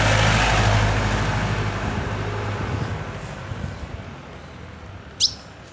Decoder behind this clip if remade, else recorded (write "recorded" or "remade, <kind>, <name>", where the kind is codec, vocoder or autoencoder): recorded